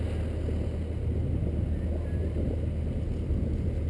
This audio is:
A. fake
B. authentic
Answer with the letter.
B